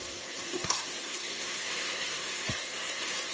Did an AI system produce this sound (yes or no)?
yes